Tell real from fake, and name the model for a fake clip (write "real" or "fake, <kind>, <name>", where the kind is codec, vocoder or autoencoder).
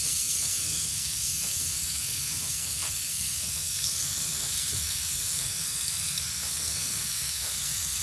fake, codec, SNAC